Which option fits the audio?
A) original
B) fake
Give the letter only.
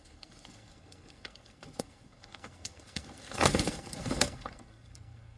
B